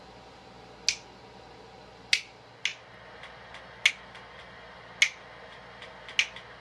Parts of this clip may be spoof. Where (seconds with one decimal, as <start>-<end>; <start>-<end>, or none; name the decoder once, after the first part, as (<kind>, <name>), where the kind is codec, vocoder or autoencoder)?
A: none